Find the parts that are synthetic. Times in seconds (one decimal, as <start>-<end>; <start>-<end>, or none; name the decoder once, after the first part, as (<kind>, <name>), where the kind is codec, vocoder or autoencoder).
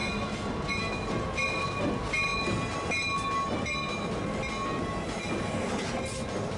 none